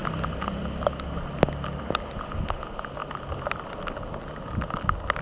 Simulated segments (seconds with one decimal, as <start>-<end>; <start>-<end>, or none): none